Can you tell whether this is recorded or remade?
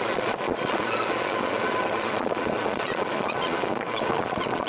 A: remade